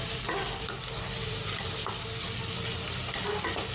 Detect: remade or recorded recorded